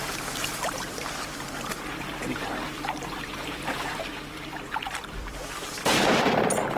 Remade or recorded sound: remade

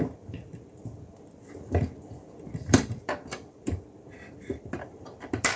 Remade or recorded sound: remade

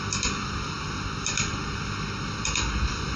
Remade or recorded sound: recorded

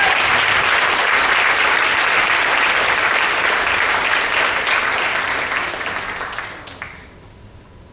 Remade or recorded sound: recorded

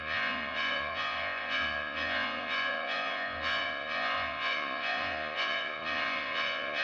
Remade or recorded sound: remade